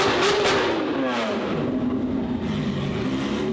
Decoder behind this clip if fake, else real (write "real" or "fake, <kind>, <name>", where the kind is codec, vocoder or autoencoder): real